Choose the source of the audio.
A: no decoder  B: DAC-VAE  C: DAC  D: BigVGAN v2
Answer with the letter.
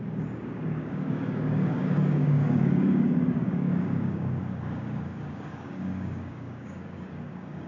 C